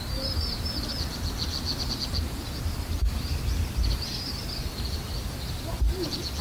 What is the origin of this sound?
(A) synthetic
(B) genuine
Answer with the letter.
B